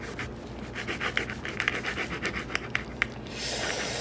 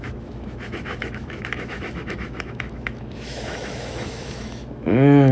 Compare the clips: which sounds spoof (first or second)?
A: second